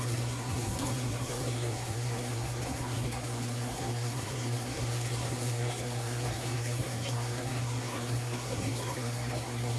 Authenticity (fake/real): fake